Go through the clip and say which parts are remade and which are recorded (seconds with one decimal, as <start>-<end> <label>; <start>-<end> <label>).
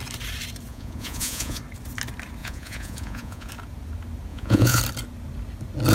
0.0-0.7 recorded; 0.7-1.6 remade; 1.6-2.4 recorded; 2.4-3.5 remade; 3.5-4.3 recorded; 4.3-4.8 remade; 4.8-5.9 recorded